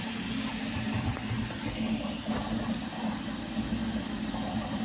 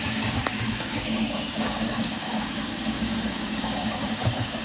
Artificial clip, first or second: second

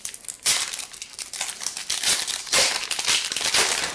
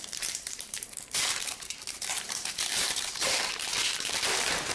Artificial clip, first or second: second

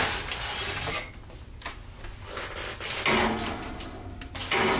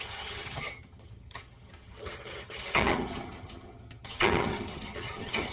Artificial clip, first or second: second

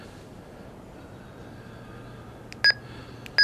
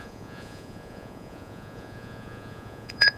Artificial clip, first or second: second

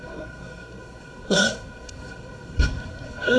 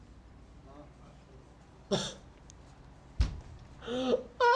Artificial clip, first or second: first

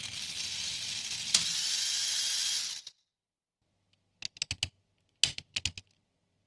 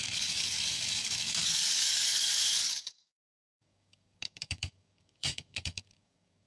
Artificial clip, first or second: second